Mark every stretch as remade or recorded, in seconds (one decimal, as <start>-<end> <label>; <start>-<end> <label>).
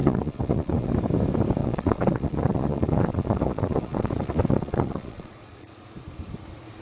0.0-0.9 remade; 0.9-1.6 recorded; 1.6-5.7 remade; 5.7-6.8 recorded